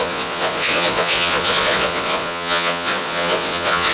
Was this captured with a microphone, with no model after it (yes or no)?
no